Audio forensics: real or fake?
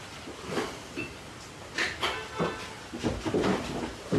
real